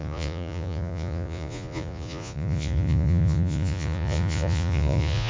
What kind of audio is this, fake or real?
fake